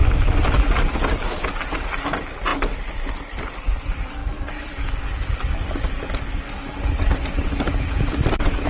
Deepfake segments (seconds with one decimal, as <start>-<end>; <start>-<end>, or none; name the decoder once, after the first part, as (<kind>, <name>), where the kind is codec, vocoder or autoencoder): none

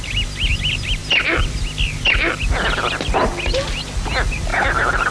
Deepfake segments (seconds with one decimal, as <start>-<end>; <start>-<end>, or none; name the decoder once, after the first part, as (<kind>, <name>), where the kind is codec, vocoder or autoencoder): none

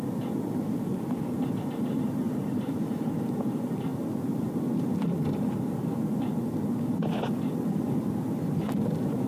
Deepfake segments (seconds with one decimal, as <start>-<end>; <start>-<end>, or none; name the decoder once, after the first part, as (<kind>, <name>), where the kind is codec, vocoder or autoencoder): 0.0-0.9 (vocoder, BigVGAN v2); 1.6-9.3

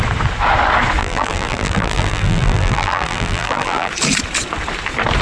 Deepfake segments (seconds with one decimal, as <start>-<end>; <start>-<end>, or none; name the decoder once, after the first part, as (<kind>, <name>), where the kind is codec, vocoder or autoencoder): 1.0-3.9 (vocoder, BigVGAN v2)